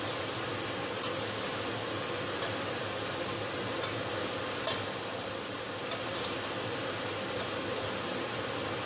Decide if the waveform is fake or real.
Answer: real